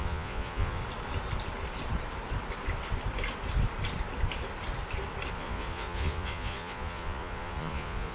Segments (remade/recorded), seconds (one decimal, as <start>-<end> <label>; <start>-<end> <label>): 0.0-0.8 remade; 0.8-5.3 recorded; 5.3-8.1 remade